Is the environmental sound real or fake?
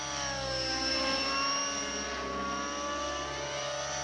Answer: real